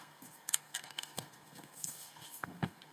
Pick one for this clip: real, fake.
fake